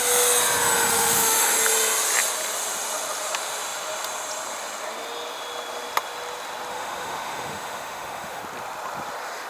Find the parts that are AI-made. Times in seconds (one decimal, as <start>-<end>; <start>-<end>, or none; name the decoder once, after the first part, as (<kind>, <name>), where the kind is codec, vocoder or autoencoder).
0.9-1.6 (autoencoder, DAC-VAE); 6.7-8.4